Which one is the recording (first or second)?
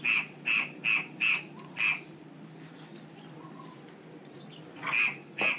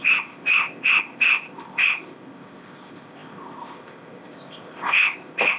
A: first